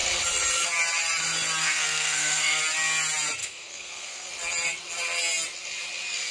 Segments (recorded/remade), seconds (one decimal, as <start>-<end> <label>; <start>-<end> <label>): 0.0-1.6 recorded; 1.6-2.6 remade; 2.6-3.4 recorded; 3.4-4.3 remade; 4.3-6.3 recorded